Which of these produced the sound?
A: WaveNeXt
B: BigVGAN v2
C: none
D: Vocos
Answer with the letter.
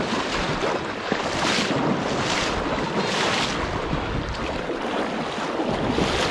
C